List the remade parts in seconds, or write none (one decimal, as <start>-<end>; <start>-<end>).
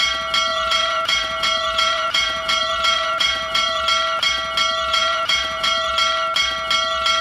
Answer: 0.5-3.8; 4.9-5.9